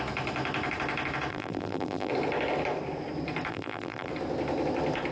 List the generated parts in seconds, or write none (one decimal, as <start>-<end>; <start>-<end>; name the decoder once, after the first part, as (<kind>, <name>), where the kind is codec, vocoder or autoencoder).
1.3-2.1 (vocoder, BigVGAN v2); 3.5-4.1